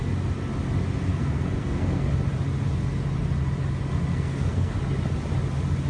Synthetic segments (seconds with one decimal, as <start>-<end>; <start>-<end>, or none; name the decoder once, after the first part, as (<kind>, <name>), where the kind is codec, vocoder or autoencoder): 1.1-2.1 (codec, SNAC); 4.1-4.7